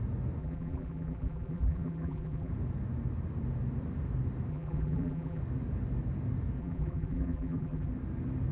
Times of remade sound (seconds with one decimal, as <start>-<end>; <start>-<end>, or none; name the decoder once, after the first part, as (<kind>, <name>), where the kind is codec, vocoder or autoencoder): 0.4-2.5 (vocoder, BigVGAN v2); 4.5-5.4; 6.6-7.9